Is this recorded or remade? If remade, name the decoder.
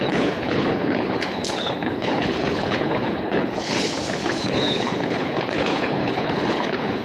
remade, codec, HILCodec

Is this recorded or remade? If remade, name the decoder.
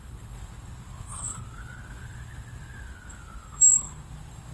remade, codec, HILCodec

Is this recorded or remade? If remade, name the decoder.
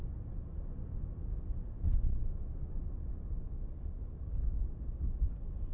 recorded